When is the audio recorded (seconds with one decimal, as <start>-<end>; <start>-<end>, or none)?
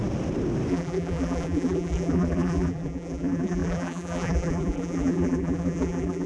0.0-0.7